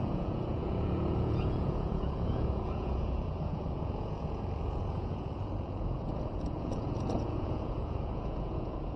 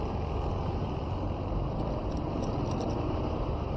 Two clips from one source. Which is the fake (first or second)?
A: first